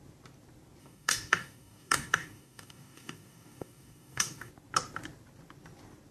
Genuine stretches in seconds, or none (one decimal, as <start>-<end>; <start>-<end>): 0.0-0.8; 4.5-6.1